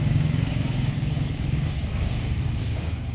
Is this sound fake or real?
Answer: fake